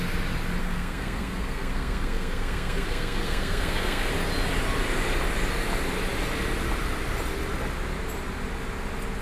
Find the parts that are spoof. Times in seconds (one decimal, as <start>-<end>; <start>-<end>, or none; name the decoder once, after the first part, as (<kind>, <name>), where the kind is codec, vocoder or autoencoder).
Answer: 0.6-4.1 (codec, SNAC)

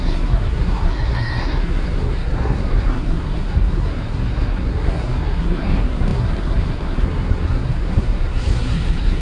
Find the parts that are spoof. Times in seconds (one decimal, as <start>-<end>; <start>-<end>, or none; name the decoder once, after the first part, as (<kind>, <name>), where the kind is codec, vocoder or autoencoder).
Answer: 0.0-9.2 (codec, SNAC)

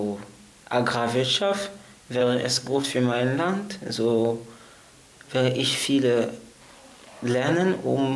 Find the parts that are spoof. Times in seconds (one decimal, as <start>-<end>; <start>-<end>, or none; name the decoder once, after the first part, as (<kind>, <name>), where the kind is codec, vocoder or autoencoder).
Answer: 2.2-2.9 (codec, SNAC)

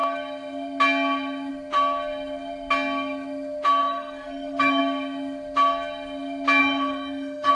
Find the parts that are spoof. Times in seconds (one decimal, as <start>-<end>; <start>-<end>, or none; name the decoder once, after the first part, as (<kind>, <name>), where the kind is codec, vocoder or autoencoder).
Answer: 3.8-4.8 (codec, SNAC); 6.6-7.5

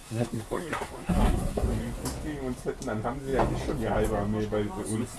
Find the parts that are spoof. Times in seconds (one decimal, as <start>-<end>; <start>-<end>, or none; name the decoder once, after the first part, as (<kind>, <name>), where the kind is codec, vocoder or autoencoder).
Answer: 0.0-1.8 (codec, SNAC)

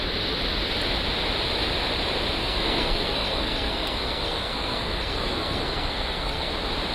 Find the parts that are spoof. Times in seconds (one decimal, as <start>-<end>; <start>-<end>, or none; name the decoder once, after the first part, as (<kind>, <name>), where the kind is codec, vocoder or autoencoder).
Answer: 2.4-6.5 (codec, SNAC)